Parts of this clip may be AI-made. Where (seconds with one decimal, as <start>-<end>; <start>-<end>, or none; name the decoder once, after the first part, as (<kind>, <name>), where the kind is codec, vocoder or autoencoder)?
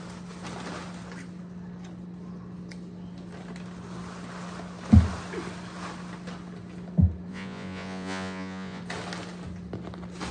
7.3-8.8 (vocoder, Vocos)